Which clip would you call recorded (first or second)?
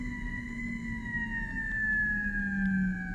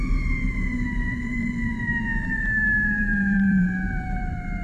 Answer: first